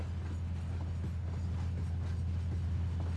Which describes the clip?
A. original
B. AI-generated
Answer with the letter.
A